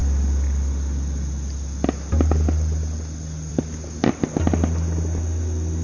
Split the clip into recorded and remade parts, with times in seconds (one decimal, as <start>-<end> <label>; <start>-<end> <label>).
0.0-5.8 recorded